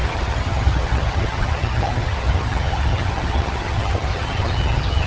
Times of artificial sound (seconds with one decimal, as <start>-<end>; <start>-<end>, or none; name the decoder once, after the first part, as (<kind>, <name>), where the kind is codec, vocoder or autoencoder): 0.0-5.1 (vocoder, HiFi-GAN)